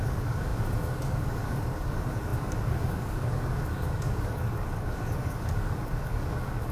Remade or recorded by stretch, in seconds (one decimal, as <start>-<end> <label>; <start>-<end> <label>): 0.0-6.7 remade